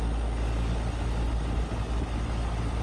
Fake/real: real